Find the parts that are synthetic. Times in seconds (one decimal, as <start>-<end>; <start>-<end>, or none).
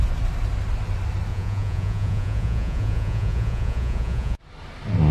1.3-4.4